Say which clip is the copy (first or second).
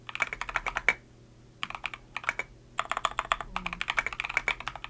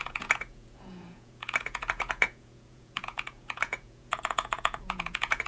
second